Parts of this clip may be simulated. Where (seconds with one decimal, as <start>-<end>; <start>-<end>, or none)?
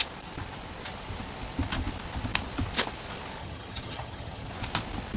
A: 3.4-4.5